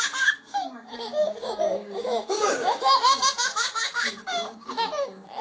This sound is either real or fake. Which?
fake